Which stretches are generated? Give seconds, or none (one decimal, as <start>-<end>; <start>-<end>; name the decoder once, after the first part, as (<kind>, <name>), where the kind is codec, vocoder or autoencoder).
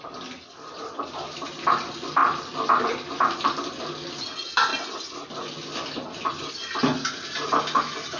none